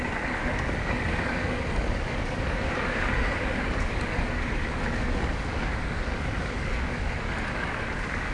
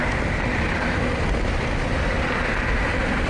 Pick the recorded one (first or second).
second